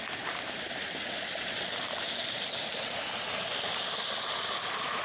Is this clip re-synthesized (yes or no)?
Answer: no